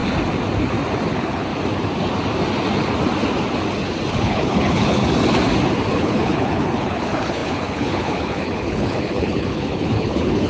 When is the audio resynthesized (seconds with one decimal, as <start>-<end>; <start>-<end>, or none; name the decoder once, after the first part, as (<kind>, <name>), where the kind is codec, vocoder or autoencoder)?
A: 1.1-1.5 (codec, HILCodec); 4.1-5.0; 5.9-10.5